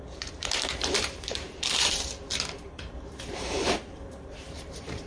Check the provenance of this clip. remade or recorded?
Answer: remade